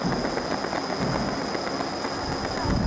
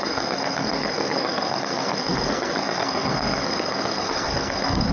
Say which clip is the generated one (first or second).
second